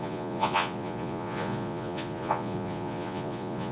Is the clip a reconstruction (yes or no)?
yes